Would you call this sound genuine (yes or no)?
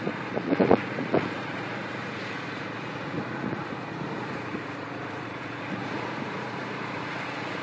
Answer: no